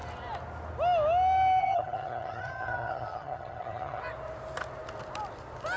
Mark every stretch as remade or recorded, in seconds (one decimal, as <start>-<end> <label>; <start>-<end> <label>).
0.0-1.6 recorded; 1.6-4.0 remade; 4.0-5.8 recorded